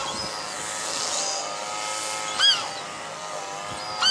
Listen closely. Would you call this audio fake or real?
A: real